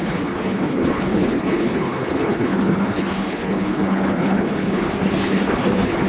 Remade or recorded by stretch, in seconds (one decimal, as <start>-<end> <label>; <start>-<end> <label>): 0.0-6.1 remade